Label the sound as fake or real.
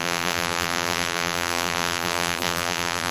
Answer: fake